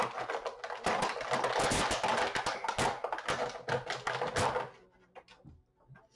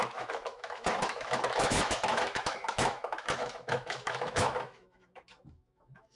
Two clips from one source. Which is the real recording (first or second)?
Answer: first